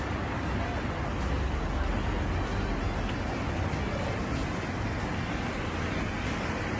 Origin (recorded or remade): recorded